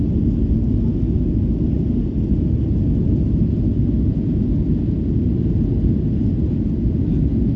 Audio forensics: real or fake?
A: real